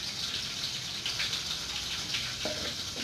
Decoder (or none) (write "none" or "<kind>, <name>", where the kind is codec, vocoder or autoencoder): none